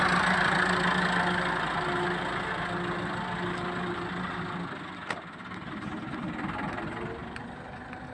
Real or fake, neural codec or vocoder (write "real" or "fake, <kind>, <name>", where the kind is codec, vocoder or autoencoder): real